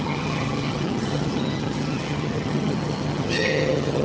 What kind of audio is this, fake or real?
fake